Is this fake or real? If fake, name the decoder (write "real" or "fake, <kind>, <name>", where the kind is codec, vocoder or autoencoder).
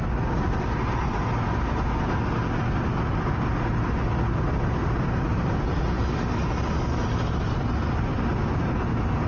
real